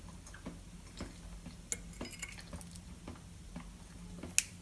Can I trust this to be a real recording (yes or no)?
yes